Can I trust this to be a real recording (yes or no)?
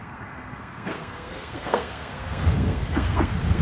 no